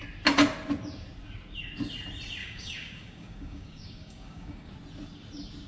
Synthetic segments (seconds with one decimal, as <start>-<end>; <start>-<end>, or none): 2.4-4.7